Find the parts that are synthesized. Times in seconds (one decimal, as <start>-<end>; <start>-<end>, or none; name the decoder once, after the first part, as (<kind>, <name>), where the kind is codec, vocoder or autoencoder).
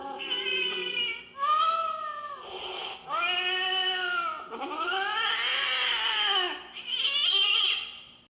0.5-1.2 (vocoder, BigVGAN v2); 1.8-2.9